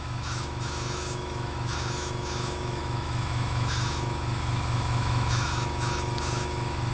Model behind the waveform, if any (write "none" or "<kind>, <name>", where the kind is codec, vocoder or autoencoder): autoencoder, DAC-VAE